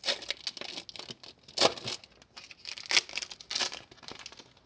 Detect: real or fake real